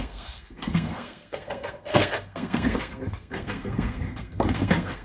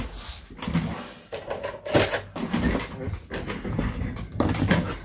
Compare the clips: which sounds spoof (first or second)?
first